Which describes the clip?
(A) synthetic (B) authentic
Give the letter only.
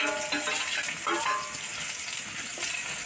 B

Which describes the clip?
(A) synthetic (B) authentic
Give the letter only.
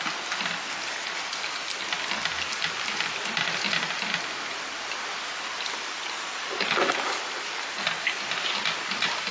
B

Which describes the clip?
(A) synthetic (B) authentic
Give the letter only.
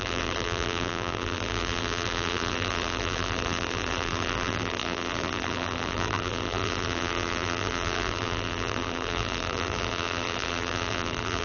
A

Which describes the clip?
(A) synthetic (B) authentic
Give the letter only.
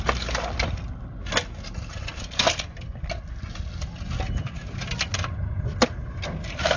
B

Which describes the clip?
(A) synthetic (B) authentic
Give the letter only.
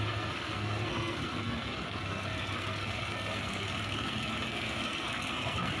A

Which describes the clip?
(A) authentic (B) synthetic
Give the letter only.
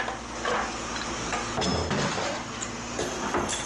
A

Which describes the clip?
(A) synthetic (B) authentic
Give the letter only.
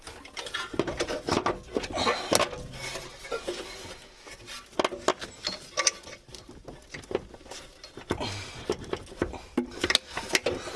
B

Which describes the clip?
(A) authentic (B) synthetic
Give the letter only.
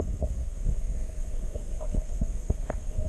B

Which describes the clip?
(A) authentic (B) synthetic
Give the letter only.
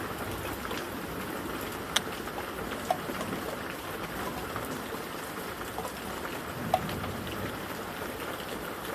A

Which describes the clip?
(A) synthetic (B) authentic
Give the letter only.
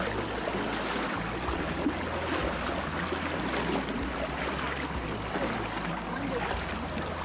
B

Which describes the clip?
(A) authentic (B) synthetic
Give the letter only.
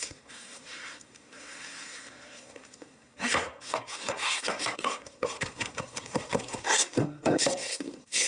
B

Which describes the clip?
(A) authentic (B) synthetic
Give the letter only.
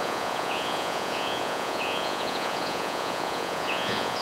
B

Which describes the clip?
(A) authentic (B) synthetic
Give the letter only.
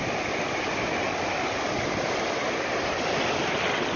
A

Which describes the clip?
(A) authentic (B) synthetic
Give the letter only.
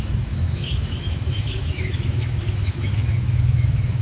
B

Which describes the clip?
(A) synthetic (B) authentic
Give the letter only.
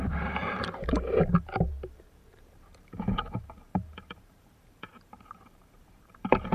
A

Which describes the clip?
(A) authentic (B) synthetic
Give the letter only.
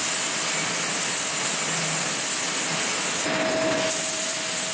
A